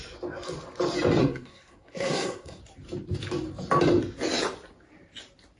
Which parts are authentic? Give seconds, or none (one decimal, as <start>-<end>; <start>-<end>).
0.0-1.2; 2.6-5.6